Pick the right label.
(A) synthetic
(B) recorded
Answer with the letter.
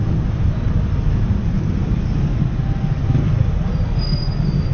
B